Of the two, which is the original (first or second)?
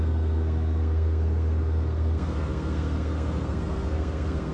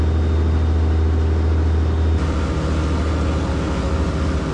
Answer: second